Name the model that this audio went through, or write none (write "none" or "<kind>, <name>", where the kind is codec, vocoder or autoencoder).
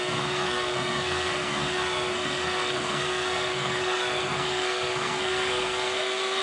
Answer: codec, SNAC